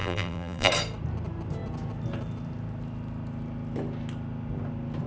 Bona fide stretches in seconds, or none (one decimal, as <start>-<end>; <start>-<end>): 0.7-5.1